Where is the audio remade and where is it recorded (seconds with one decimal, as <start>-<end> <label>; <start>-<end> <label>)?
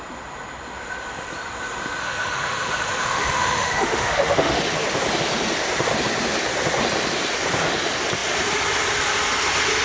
0.0-2.0 recorded; 2.0-4.6 remade; 4.6-9.8 recorded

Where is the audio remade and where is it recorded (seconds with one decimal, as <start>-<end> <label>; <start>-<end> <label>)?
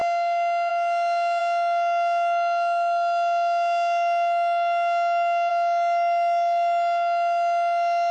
0.0-8.1 recorded